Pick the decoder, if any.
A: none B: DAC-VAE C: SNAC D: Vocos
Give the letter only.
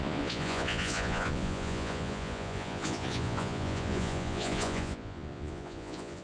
D